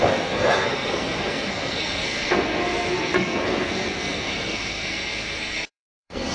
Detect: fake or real fake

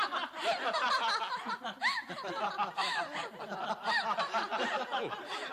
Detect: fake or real real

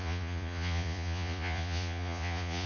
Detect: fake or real fake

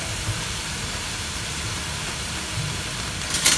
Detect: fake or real real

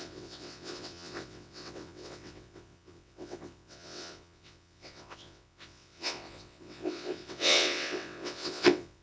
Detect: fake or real fake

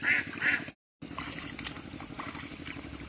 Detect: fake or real real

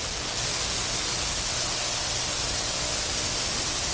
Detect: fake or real real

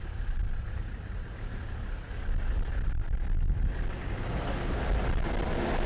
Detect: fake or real real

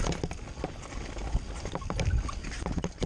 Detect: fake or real real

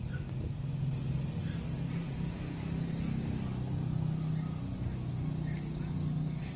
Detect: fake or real real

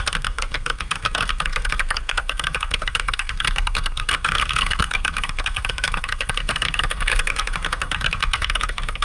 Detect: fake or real fake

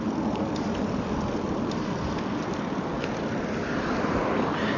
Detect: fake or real fake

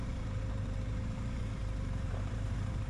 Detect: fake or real fake